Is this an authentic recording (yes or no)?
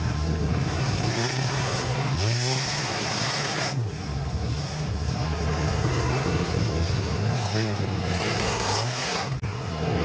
no